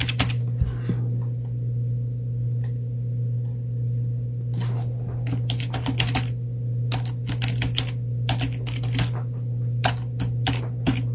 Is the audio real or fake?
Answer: real